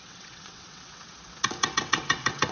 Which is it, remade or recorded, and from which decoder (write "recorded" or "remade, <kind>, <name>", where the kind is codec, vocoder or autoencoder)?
remade, vocoder, WaveNeXt